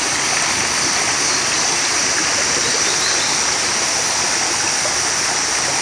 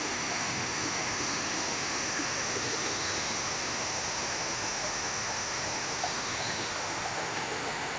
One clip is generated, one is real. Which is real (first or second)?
first